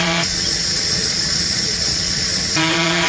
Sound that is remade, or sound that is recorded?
remade